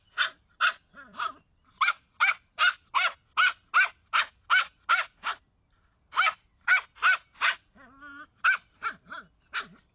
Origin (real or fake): real